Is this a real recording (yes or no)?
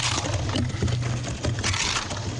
yes